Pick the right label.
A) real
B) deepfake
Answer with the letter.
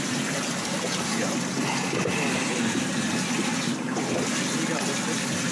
A